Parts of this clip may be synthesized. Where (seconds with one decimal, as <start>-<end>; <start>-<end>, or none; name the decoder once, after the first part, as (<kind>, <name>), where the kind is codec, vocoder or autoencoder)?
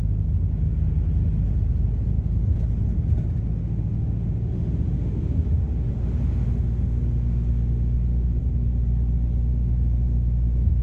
3.6-8.4 (autoencoder, DAC-VAE); 9.5-10.8